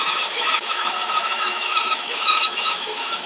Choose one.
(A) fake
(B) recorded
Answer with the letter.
A